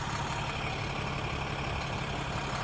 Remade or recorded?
recorded